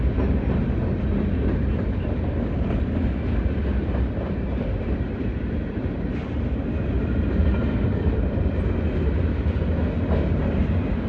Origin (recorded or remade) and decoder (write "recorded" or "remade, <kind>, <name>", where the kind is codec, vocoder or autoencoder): recorded